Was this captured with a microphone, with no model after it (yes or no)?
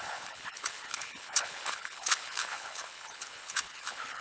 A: no